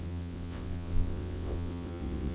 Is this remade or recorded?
remade